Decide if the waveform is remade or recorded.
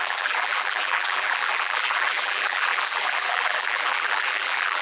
remade